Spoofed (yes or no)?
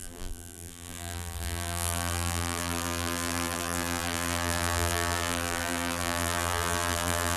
yes